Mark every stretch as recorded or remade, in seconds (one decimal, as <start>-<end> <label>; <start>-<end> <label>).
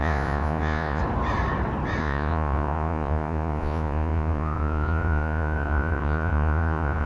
0.0-1.0 remade; 1.0-2.0 recorded; 2.0-7.1 remade